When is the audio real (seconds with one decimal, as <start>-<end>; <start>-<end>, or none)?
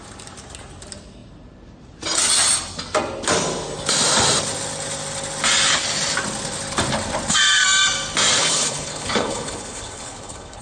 0.0-8.4